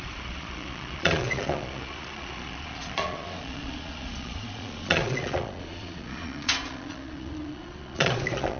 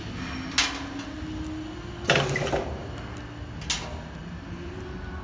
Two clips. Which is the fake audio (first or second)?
first